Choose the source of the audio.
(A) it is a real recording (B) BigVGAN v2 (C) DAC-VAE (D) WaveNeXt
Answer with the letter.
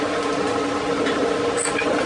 A